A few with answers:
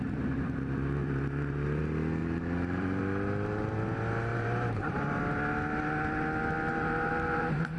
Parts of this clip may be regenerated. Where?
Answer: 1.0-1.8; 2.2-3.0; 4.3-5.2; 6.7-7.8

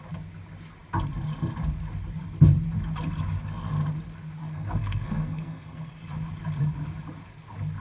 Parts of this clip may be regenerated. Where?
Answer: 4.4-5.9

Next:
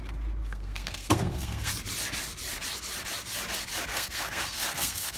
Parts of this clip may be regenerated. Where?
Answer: 0.4-1.7; 3.9-5.2

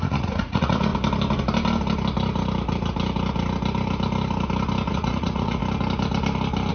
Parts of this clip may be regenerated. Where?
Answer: 0.0-0.9; 4.9-5.6

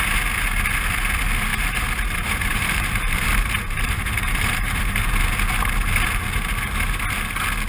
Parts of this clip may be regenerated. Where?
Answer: 1.5-5.1

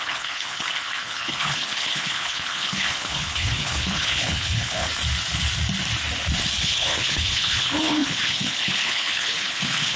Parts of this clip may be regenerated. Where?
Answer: 0.0-4.9; 6.6-10.0

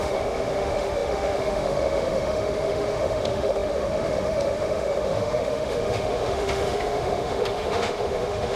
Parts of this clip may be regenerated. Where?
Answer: 0.0-8.6